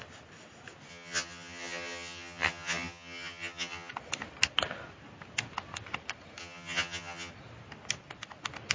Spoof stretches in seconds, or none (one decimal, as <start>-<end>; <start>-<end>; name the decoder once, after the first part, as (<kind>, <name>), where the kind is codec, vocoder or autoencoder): 0.9-3.9 (vocoder, HiFi-GAN); 6.4-7.3

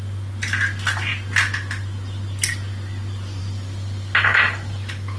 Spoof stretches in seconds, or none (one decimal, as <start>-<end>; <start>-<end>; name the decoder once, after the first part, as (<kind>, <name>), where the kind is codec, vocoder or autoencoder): none

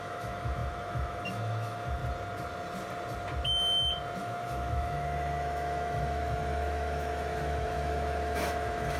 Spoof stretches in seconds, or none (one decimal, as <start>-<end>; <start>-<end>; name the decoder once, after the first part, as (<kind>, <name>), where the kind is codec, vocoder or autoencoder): 0.0-2.0 (autoencoder, DAC-VAE); 4.2-9.0

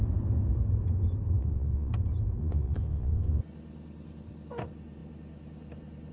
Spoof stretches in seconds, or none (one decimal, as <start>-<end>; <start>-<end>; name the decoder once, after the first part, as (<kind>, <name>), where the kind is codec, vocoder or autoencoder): 1.4-1.9 (vocoder, Vocos); 2.4-3.4

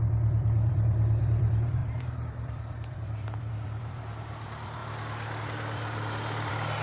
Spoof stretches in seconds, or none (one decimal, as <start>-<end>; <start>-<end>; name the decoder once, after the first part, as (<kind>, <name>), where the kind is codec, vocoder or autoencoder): 0.0-4.8 (vocoder, BigVGAN v2); 5.4-6.8

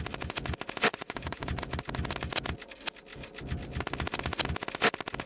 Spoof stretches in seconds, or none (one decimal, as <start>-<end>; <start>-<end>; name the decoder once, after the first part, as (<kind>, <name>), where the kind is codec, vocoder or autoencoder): 0.9-1.6 (vocoder, Vocos)

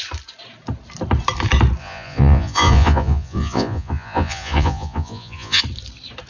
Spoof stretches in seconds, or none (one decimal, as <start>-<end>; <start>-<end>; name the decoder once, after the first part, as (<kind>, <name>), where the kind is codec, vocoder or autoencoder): 1.8-5.6 (vocoder, Vocos)

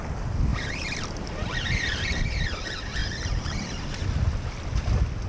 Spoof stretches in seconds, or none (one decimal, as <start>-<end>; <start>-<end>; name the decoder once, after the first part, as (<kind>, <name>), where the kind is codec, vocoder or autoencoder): 0.5-2.2 (vocoder, BigVGAN v2); 3.0-4.0